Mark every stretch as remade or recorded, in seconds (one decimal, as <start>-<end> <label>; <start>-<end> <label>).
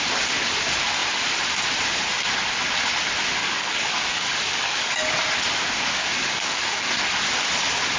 0.0-3.4 recorded; 3.4-5.1 remade; 5.1-6.0 recorded; 6.0-6.9 remade; 6.9-8.0 recorded